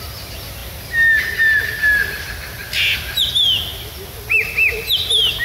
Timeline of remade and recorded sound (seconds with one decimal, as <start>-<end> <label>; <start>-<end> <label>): 0.0-5.4 recorded

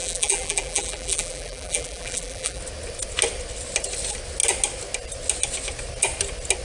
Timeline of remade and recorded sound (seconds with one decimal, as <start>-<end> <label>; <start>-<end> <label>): 0.0-2.6 remade; 2.6-6.6 recorded

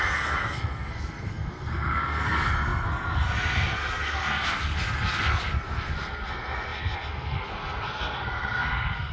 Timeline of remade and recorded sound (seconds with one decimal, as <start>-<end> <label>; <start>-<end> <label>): 0.0-9.1 remade

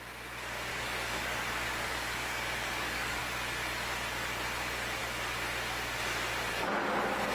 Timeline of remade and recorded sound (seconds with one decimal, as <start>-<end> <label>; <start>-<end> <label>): 0.0-0.7 recorded; 0.7-3.2 remade; 3.2-7.3 recorded

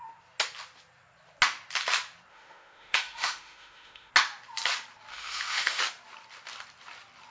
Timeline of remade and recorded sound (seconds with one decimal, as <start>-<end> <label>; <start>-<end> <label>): 0.0-2.3 recorded; 2.3-4.1 remade; 4.1-5.1 recorded; 5.1-5.8 remade; 5.8-7.3 recorded